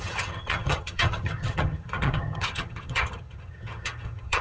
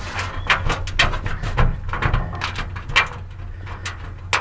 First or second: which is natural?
second